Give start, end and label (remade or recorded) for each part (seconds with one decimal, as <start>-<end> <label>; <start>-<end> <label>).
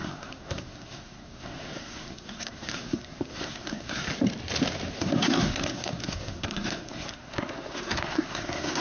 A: 0.0-4.1 remade; 4.1-5.0 recorded; 5.0-8.8 remade